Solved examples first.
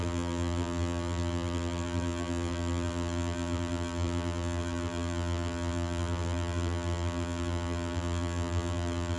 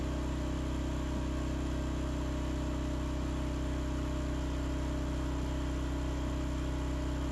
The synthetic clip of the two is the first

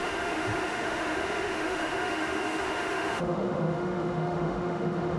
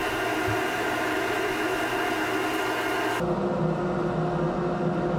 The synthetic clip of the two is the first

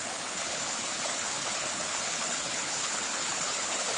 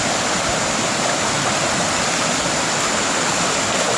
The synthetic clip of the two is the first